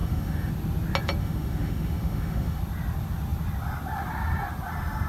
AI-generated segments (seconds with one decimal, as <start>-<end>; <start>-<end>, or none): 0.0-0.5; 1.2-2.6